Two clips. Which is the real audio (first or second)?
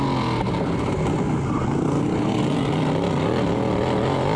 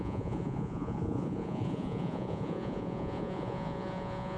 first